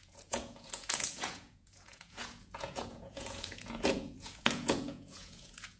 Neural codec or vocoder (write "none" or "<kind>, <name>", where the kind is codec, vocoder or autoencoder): vocoder, Vocos